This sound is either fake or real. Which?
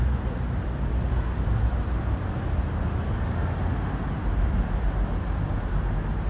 real